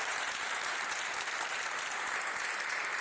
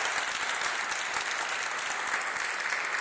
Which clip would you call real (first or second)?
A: second